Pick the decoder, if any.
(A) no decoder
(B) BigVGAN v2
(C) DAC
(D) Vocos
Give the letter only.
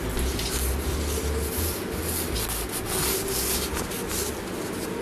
A